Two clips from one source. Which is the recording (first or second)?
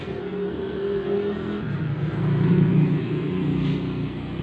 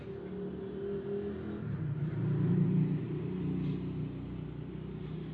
second